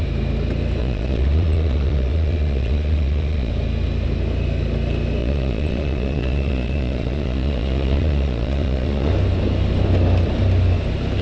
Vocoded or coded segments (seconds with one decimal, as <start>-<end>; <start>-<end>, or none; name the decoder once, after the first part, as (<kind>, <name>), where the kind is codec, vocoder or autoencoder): 0.8-3.5 (vocoder, Vocos); 5.2-9.1